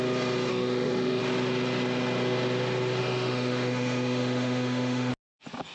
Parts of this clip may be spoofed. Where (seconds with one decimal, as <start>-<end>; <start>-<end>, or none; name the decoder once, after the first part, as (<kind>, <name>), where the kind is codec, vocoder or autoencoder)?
0.5-1.2 (autoencoder, DAC-VAE); 3.0-5.1